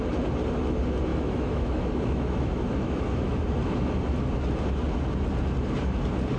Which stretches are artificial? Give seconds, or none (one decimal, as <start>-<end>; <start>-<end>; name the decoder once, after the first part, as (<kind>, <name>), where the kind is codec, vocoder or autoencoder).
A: 1.1-3.8 (autoencoder, DAC-VAE)